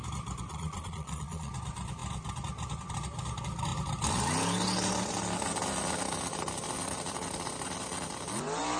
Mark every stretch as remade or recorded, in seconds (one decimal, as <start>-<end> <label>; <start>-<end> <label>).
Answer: 0.0-0.5 recorded; 0.5-1.5 remade; 1.5-8.8 recorded